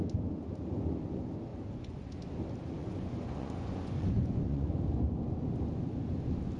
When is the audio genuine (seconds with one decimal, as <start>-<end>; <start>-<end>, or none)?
0.0-1.5; 2.2-2.8; 4.7-6.6